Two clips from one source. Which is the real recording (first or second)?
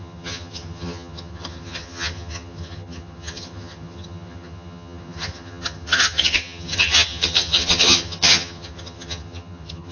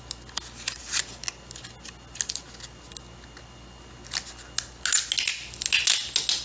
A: second